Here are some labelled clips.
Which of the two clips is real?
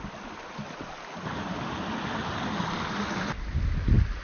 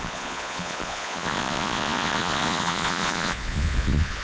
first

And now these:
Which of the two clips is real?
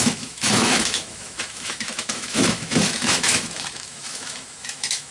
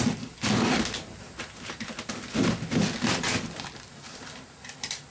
second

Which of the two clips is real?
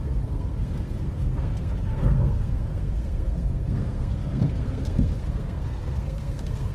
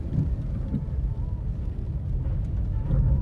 second